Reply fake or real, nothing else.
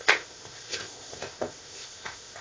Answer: fake